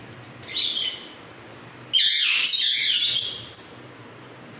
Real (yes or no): yes